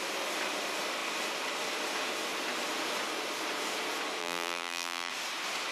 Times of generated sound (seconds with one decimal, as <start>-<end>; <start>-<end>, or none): 4.2-5.1